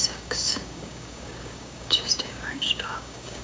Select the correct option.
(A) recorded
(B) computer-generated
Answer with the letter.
B